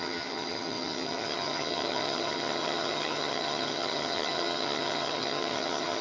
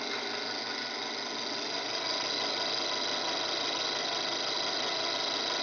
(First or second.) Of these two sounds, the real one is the second